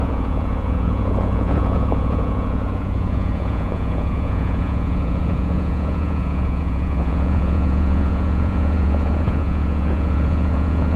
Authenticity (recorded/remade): remade